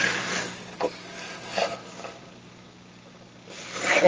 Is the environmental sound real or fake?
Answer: fake